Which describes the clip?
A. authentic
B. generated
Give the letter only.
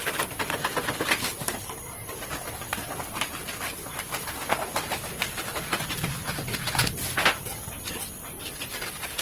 A